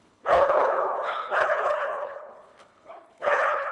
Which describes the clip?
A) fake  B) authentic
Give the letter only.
A